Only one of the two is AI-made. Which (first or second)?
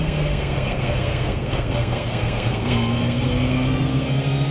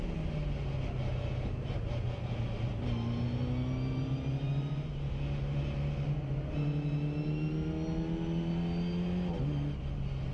first